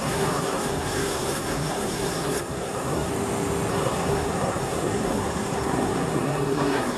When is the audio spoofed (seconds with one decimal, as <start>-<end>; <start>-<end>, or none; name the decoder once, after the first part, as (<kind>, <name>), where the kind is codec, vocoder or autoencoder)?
0.0-3.1 (codec, SNAC); 3.7-7.0